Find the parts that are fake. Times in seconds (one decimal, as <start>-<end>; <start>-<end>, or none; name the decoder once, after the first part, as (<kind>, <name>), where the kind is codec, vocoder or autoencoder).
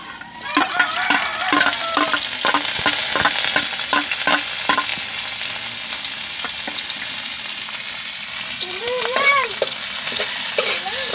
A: none